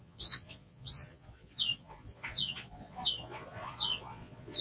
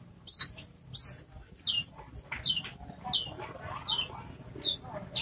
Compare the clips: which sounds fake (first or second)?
first